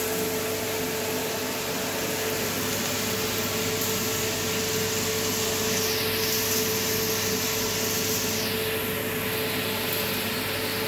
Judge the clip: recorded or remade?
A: recorded